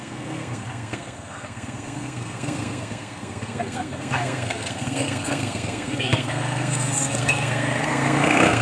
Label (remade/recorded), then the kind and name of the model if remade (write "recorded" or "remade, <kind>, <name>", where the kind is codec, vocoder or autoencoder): remade, codec, SNAC